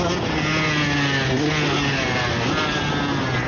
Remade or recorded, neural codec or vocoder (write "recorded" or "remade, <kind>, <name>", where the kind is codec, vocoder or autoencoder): recorded